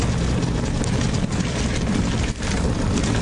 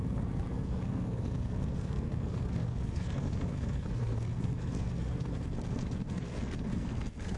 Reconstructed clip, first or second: second